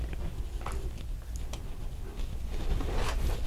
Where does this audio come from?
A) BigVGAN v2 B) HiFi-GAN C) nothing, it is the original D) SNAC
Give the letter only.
C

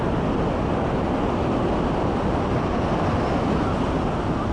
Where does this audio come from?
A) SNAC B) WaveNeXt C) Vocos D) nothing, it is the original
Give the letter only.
D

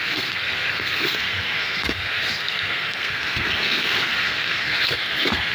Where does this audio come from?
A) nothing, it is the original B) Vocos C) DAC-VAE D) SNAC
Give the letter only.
D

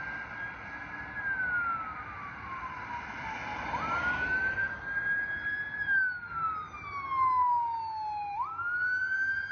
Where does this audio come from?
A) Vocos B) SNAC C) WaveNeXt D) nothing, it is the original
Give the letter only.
D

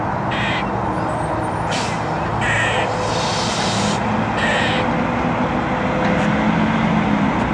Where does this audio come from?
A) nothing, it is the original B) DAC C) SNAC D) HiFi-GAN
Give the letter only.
A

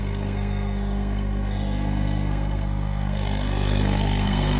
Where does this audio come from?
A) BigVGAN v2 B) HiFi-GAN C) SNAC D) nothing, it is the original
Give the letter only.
C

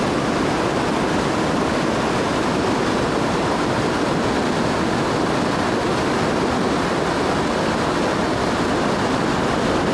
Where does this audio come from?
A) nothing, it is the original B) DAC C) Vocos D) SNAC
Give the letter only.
A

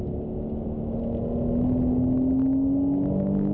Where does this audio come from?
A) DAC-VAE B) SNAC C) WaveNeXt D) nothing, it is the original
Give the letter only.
D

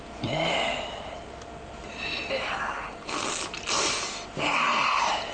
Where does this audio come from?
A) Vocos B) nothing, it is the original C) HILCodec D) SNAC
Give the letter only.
B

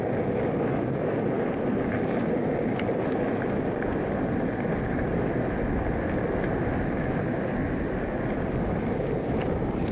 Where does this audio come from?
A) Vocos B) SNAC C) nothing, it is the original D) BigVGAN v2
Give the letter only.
C